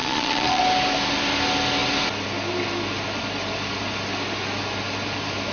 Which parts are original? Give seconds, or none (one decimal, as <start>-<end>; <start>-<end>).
0.6-5.5